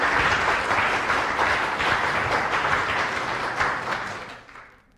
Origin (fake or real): real